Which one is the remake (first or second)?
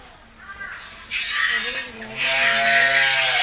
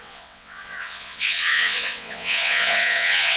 second